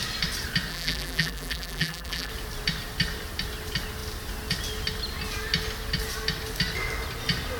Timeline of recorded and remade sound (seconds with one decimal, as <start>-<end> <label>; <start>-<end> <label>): 0.0-0.7 recorded; 0.7-2.3 remade; 2.3-7.6 recorded